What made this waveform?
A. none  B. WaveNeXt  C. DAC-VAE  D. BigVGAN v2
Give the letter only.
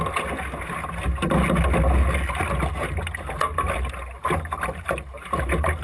A